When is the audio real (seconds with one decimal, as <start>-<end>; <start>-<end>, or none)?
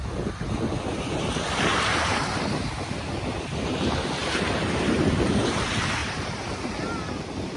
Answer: 0.0-1.7; 2.7-4.2; 5.5-6.0